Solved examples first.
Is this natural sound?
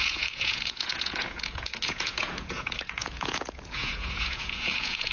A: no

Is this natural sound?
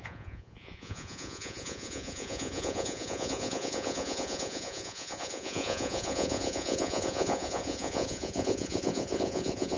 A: no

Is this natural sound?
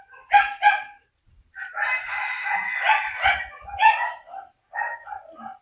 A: yes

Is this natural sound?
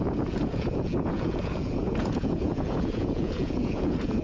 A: no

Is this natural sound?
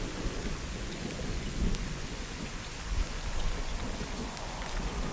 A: no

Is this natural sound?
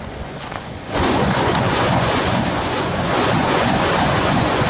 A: no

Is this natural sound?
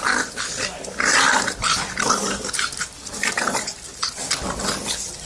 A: yes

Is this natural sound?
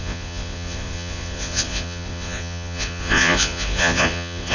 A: no